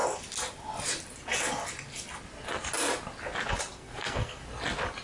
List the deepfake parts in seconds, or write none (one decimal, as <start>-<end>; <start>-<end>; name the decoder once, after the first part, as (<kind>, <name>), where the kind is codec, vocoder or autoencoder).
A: 3.7-4.4 (codec, SNAC)